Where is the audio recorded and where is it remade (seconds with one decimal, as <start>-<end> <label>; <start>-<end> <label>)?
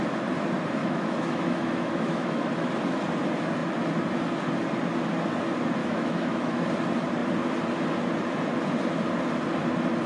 0.0-0.8 recorded; 0.8-2.7 remade; 2.7-5.8 recorded; 5.8-6.6 remade; 6.6-10.1 recorded